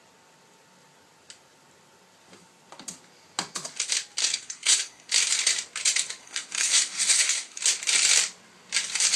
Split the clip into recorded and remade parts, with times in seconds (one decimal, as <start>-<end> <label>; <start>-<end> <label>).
0.0-4.2 recorded; 4.2-5.1 remade; 5.1-6.2 recorded; 6.2-7.6 remade; 7.6-9.2 recorded

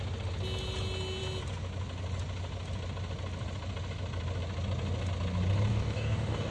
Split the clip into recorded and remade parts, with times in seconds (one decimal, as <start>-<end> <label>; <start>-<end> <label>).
0.0-5.7 recorded; 5.7-6.5 remade

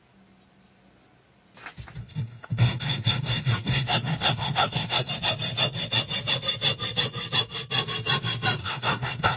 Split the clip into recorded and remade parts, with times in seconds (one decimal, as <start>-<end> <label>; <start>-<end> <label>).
0.0-2.0 recorded; 2.0-5.1 remade; 5.1-8.6 recorded; 8.6-9.4 remade

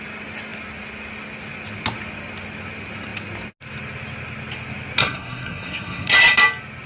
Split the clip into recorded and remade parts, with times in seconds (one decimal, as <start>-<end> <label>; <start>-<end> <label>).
0.0-5.0 recorded; 5.0-6.1 remade; 6.1-6.9 recorded

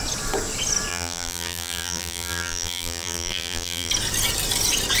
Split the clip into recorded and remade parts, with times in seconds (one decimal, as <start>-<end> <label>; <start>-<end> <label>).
0.0-0.9 recorded; 0.9-3.9 remade; 3.9-5.0 recorded

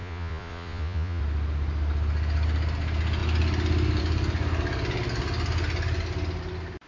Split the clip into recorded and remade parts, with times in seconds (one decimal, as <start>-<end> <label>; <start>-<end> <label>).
0.0-1.2 remade; 1.2-6.9 recorded

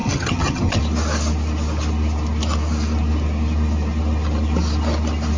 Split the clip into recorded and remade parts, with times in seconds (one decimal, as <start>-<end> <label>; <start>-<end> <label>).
0.0-0.8 remade; 0.8-5.4 recorded

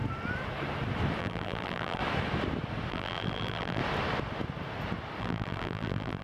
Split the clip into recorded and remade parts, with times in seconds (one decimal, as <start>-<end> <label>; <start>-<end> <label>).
0.0-1.2 recorded; 1.2-2.0 remade; 2.0-2.9 recorded; 2.9-3.8 remade; 3.8-5.2 recorded; 5.2-6.2 remade